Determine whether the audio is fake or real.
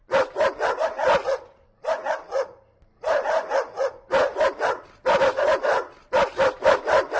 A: real